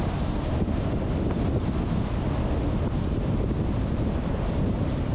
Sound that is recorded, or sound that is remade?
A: recorded